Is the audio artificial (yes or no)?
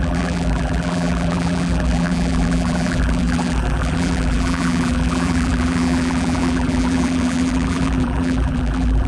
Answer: yes